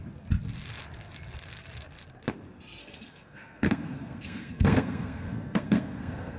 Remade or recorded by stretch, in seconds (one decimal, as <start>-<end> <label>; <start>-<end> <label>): 0.0-2.8 recorded; 2.8-6.4 remade